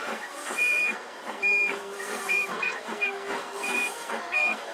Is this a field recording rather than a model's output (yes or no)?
no